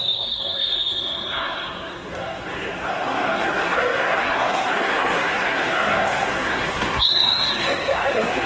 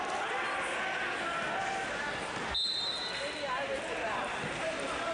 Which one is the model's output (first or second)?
first